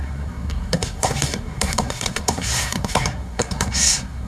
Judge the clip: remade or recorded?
remade